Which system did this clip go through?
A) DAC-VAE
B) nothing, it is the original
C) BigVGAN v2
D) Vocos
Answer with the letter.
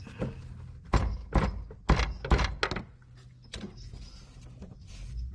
B